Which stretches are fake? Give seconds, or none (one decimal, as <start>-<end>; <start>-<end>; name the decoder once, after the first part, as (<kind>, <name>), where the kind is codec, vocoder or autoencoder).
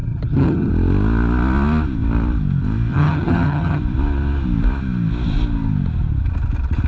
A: 0.0-0.7 (vocoder, HiFi-GAN); 2.9-3.8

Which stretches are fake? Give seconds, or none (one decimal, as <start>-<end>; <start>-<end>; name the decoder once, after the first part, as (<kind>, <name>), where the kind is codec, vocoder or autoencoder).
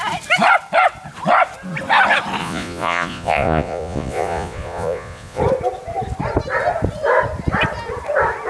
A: 2.4-5.4 (vocoder, Vocos)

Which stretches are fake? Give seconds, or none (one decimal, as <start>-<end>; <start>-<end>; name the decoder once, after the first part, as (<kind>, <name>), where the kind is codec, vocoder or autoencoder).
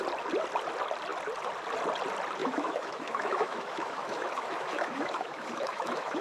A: 2.4-6.2 (autoencoder, DAC-VAE)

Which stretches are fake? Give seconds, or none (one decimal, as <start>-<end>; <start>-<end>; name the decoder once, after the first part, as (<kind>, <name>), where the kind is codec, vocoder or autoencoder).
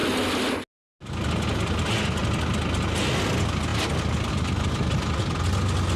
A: none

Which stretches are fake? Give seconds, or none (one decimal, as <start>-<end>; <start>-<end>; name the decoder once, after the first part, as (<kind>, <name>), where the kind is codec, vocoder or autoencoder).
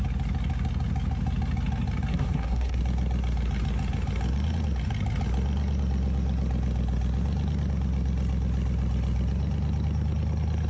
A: 2.1-2.8 (codec, SNAC)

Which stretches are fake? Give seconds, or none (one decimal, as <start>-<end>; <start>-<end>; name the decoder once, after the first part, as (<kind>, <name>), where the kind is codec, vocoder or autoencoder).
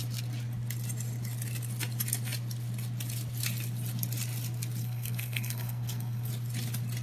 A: 4.8-6.3 (codec, SNAC)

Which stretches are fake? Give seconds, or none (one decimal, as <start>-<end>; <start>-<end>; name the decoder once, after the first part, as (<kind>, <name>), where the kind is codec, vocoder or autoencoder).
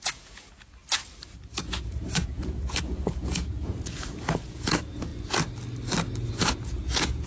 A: 0.0-0.8 (vocoder, Vocos); 1.6-5.1; 6.3-7.3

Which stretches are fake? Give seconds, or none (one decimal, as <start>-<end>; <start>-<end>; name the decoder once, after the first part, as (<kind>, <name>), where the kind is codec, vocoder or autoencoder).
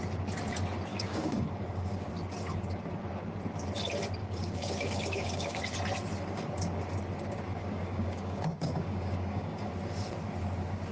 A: 0.9-2.1 (codec, DAC); 4.2-5.6; 7.6-9.7